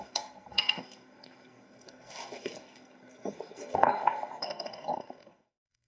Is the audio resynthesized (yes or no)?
yes